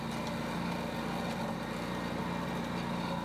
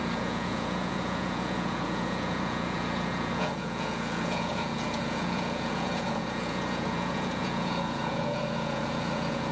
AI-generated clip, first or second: second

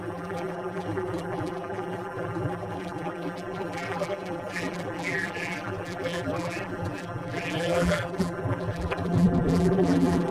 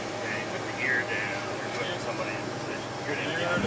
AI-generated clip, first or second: first